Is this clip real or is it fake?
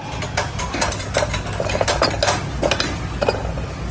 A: real